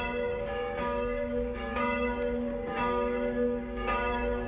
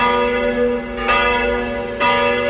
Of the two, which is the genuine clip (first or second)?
second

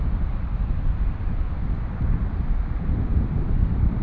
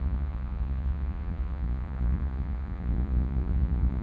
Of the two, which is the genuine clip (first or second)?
first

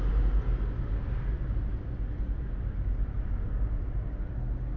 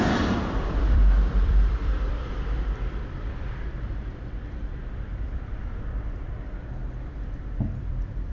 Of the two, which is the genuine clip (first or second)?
first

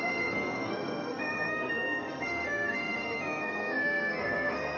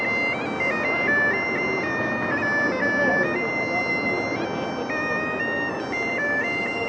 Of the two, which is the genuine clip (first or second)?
second